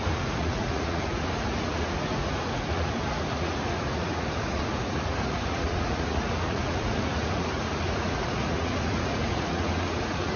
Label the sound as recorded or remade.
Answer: remade